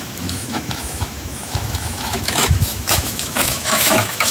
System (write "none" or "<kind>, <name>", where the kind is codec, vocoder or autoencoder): autoencoder, DAC-VAE